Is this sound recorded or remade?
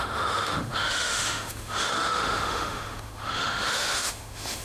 remade